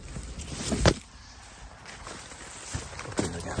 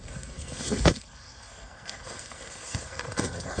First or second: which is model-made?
second